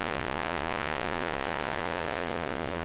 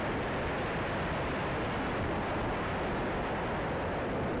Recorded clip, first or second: second